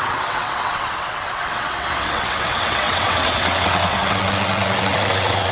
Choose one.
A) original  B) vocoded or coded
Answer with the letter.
B